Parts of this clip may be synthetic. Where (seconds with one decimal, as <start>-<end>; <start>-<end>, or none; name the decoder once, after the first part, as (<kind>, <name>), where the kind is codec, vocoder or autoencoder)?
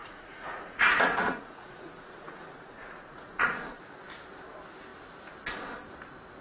0.0-3.8 (vocoder, Vocos)